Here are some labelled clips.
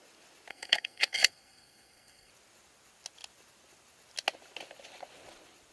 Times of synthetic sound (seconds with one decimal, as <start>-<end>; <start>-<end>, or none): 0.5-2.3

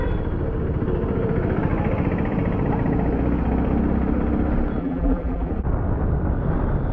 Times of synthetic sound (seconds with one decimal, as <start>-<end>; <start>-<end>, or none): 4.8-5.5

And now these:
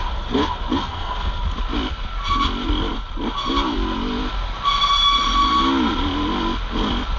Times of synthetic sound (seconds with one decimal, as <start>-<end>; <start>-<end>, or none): 0.8-1.4

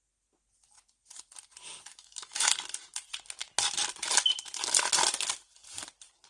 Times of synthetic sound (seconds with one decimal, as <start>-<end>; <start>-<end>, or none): 1.9-2.5

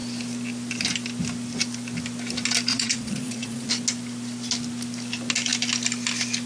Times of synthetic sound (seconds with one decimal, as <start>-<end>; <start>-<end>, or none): 2.7-3.7

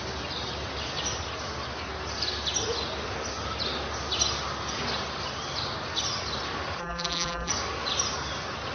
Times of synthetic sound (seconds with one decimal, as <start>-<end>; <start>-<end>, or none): 6.8-7.5

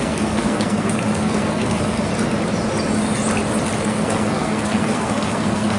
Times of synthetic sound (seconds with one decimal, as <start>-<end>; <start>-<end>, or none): 0.0-2.1; 3.8-5.8